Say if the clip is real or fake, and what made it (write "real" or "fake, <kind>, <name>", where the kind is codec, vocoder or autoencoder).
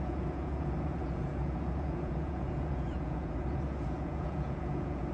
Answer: fake, vocoder, Vocos